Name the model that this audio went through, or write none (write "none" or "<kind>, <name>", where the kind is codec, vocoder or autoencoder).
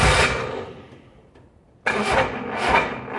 none